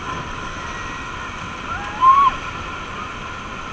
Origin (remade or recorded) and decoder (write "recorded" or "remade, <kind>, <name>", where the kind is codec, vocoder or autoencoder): recorded